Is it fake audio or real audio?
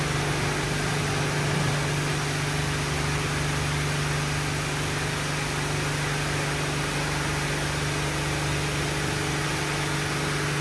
real